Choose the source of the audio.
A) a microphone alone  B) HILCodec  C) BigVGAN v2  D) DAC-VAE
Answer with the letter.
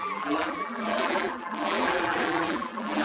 C